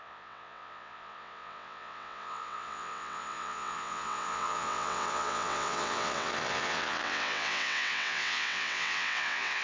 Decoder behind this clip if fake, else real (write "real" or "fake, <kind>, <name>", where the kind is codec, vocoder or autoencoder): fake, vocoder, WaveNeXt